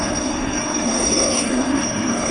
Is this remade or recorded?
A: remade